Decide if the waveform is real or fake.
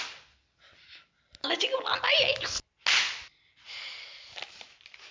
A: real